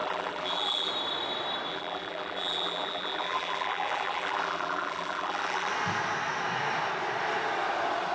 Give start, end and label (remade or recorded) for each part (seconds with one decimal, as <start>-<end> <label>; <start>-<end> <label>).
0.0-0.9 remade; 0.9-1.7 recorded; 1.7-5.7 remade; 5.7-8.1 recorded